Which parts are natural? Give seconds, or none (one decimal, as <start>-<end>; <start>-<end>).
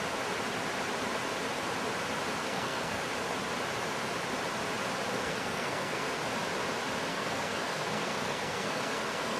0.0-2.4; 3.0-5.1; 6.2-7.1